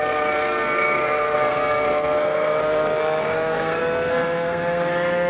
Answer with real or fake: fake